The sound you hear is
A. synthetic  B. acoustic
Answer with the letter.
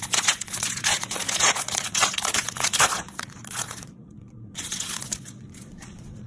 A